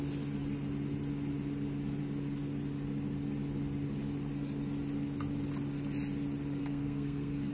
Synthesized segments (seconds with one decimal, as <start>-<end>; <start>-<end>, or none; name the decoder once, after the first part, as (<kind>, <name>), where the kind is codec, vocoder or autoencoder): 6.6-7.5 (codec, SNAC)